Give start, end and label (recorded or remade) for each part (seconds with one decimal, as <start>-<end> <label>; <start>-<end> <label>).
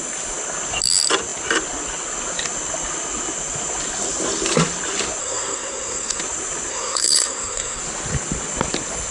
0.0-5.2 recorded; 5.2-6.2 remade; 6.2-6.7 recorded; 6.7-7.8 remade; 7.8-9.1 recorded